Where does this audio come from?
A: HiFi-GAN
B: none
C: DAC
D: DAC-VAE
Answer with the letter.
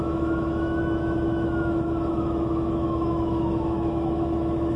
D